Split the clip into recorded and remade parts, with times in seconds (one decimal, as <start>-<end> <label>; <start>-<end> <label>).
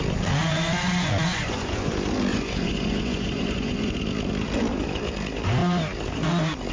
0.0-0.4 recorded; 0.4-1.9 remade; 1.9-2.3 recorded; 2.3-4.0 remade; 4.0-6.7 recorded